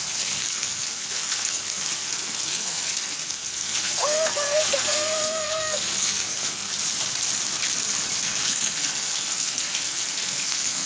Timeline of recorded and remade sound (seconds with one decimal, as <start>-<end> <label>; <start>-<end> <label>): 0.0-6.7 remade; 6.7-8.2 recorded; 8.2-10.9 remade